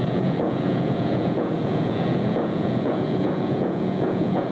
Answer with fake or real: fake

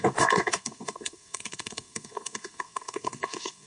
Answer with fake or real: fake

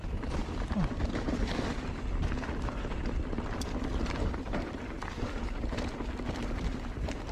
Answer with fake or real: real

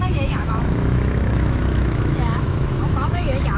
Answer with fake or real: fake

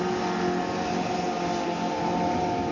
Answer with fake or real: real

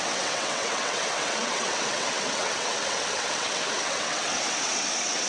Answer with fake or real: fake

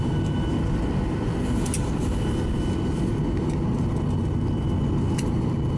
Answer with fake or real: real